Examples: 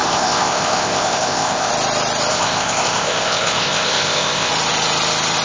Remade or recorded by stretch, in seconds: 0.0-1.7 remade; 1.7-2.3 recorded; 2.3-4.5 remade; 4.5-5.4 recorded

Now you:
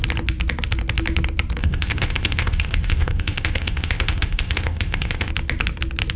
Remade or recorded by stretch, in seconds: 0.0-1.6 recorded; 1.6-5.3 remade; 5.3-6.2 recorded

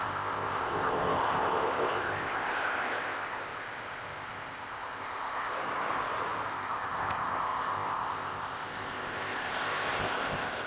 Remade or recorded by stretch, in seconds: 0.0-5.6 remade; 5.6-6.5 recorded; 6.5-10.7 remade